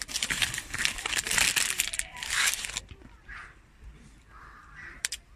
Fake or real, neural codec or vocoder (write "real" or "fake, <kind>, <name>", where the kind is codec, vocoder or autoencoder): fake, vocoder, BigVGAN v2